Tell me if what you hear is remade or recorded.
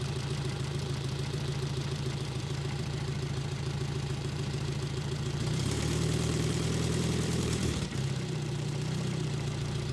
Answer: remade